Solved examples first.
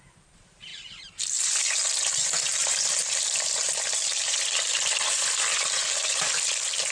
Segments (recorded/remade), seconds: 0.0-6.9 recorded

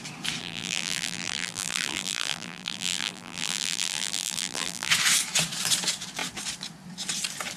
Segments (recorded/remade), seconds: 0.0-0.4 recorded; 0.4-4.9 remade; 4.9-7.6 recorded

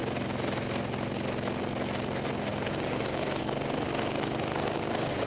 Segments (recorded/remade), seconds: 0.0-2.5 recorded; 2.5-5.3 remade

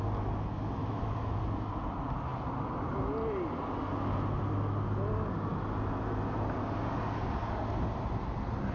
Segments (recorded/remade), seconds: 0.0-0.8 recorded; 0.8-1.4 remade; 1.4-8.7 recorded

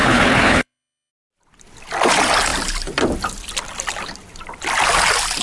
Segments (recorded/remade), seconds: 0.0-1.1 remade; 1.1-5.4 recorded

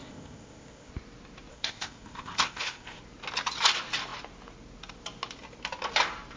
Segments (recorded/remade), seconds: 0.0-0.9 remade; 0.9-1.5 recorded; 1.5-3.0 remade; 3.0-6.4 recorded

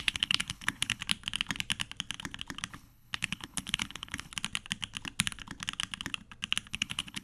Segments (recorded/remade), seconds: 0.0-1.0 remade; 1.0-2.7 recorded; 2.7-4.3 remade; 4.3-6.7 recorded; 6.7-7.2 remade